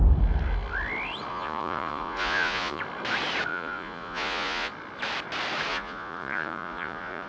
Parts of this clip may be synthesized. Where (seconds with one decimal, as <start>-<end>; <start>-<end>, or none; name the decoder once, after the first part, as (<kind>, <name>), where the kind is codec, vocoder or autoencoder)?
1.3-2.8 (vocoder, Vocos); 3.5-4.7; 5.7-7.3